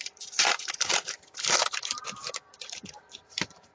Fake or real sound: fake